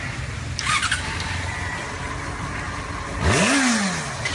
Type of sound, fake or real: real